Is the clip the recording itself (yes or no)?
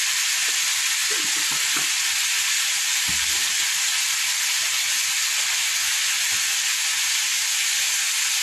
yes